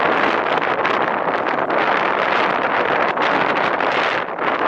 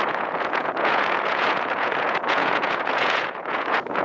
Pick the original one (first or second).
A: first